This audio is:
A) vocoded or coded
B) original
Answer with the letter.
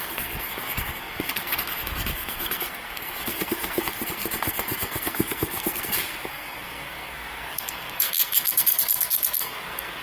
A